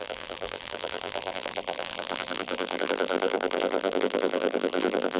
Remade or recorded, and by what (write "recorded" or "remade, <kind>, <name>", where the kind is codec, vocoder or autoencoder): remade, vocoder, BigVGAN v2